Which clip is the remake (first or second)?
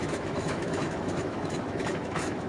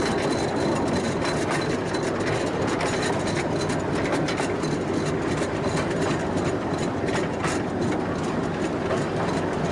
first